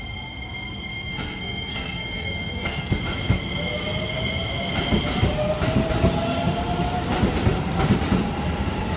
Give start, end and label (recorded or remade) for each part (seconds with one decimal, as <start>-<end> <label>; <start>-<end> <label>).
0.0-0.9 recorded; 0.9-3.0 remade; 3.0-9.0 recorded